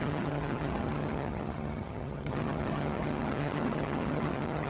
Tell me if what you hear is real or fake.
fake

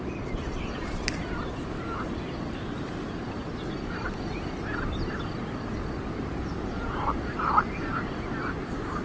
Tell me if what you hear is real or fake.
real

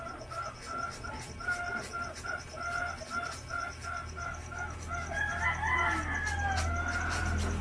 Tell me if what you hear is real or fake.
real